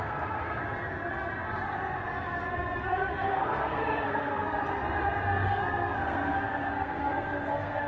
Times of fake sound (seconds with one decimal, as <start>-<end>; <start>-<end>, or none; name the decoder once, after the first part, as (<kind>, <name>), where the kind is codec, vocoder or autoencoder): 0.0-0.6 (codec, SNAC); 2.5-4.6; 5.5-7.9